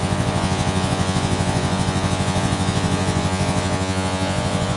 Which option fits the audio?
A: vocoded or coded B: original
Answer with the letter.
A